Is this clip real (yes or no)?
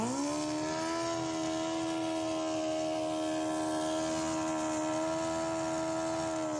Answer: yes